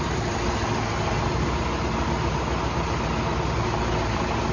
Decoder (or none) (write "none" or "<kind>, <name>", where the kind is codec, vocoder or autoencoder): none